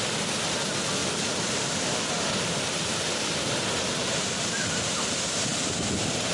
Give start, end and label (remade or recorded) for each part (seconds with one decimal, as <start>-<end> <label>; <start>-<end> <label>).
0.0-6.3 recorded